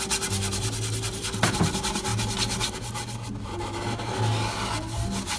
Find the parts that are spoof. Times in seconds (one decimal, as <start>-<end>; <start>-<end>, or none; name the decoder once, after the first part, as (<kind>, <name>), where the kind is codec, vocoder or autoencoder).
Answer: none